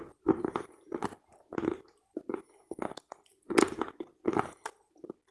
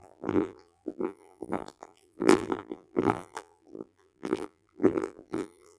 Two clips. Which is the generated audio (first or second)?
second